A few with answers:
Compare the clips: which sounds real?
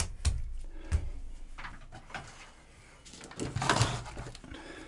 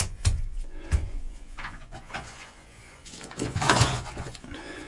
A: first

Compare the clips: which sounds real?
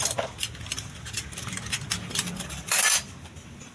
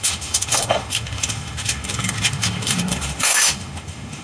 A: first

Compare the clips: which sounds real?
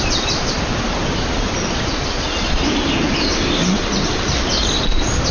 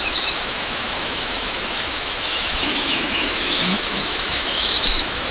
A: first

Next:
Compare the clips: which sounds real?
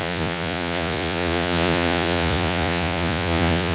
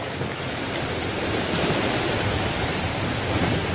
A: second